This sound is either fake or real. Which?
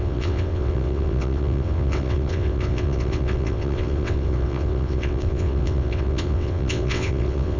fake